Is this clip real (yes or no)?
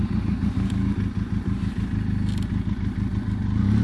yes